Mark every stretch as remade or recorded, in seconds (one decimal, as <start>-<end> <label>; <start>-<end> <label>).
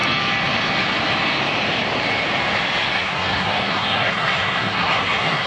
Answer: 0.0-2.9 recorded; 2.9-5.5 remade